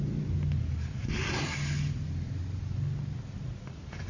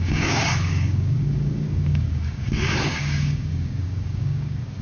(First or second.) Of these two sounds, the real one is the first